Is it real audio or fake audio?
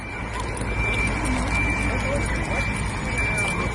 real